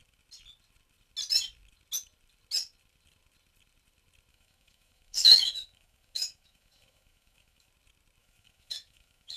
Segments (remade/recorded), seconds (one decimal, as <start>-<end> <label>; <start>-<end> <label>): 0.0-4.3 recorded; 4.3-7.7 remade; 7.7-8.2 recorded; 8.2-9.4 remade